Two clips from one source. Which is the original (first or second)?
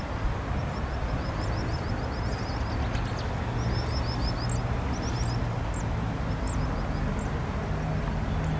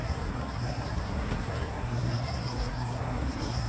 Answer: first